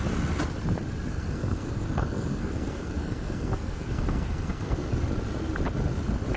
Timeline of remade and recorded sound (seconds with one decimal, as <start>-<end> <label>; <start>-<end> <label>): 0.0-1.1 recorded; 1.1-4.9 remade; 4.9-6.4 recorded